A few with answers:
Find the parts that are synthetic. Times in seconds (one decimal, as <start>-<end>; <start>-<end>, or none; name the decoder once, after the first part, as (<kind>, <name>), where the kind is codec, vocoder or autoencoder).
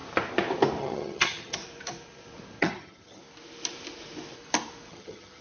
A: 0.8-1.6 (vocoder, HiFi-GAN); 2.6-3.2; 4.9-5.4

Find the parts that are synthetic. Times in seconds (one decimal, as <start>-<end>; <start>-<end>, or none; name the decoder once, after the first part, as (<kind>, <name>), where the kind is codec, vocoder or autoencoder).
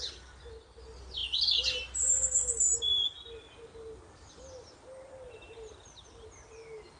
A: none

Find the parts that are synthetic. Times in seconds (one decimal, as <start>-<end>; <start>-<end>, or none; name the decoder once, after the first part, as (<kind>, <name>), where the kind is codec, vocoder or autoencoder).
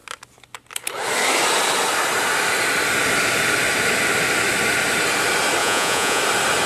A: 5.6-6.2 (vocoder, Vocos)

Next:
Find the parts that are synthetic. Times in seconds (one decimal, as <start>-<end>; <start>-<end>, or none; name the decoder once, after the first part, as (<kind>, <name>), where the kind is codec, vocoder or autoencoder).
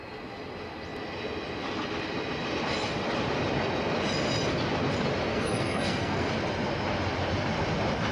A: 5.3-6.3 (codec, SNAC)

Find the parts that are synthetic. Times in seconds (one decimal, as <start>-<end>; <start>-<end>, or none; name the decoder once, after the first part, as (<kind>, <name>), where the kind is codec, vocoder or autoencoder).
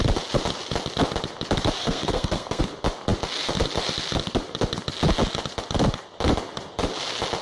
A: 1.8-2.6 (codec, SNAC)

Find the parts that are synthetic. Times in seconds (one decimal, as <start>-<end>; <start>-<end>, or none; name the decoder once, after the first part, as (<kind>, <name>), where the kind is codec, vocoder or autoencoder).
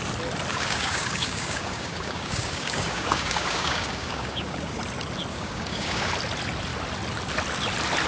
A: 0.5-4.8 (codec, DAC); 5.3-6.1